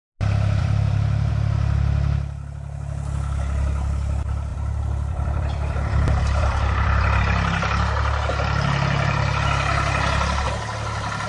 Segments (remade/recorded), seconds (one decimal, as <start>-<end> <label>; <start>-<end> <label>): 0.0-0.6 recorded; 0.6-1.3 remade; 1.3-4.5 recorded; 4.5-7.2 remade; 7.2-11.3 recorded